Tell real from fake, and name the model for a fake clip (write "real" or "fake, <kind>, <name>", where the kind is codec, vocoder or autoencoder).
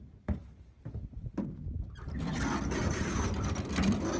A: real